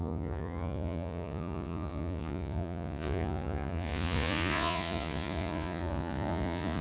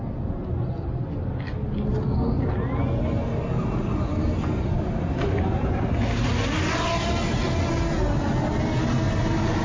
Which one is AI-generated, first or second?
first